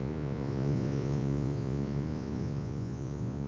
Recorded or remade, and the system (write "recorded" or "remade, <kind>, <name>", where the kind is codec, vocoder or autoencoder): remade, vocoder, Vocos